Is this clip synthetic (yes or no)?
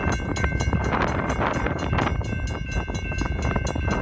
no